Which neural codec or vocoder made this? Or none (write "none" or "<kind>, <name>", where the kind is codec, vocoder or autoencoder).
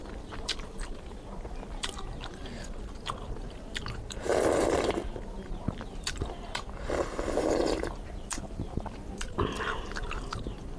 vocoder, BigVGAN v2